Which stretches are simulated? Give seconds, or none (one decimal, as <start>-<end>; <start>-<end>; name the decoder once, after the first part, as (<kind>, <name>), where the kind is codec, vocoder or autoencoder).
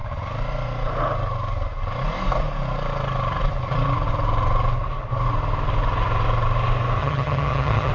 7.0-7.9 (vocoder, HiFi-GAN)